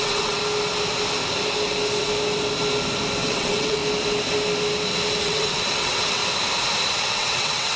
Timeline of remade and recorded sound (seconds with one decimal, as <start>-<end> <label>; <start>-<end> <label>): 0.0-0.4 remade; 0.4-3.2 recorded; 3.2-3.8 remade; 3.8-5.2 recorded; 5.2-6.2 remade; 6.2-7.0 recorded; 7.0-7.8 remade